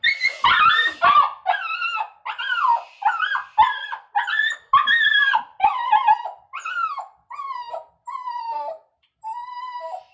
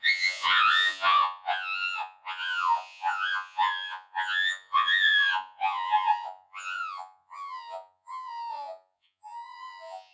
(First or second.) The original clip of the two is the first